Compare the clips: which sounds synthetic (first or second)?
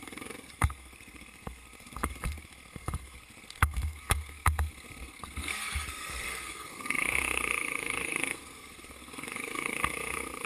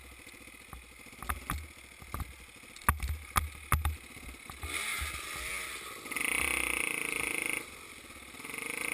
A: first